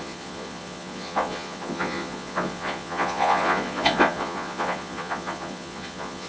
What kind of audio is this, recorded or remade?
remade